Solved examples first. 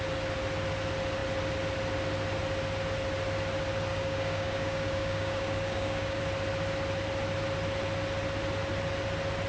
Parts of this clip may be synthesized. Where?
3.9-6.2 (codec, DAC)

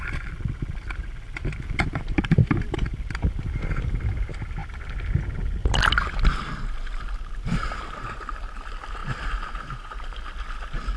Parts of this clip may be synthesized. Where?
none